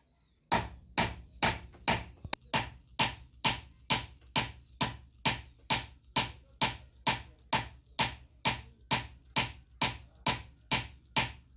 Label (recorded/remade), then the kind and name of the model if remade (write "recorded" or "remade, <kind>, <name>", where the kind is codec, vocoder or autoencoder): recorded